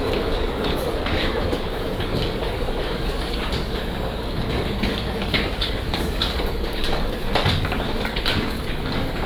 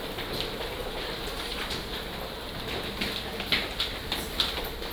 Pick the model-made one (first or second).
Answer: first